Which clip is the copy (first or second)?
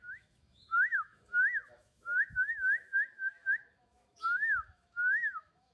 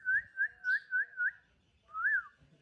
first